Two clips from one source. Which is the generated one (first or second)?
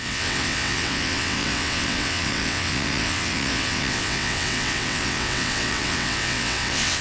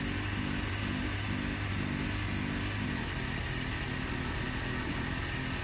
first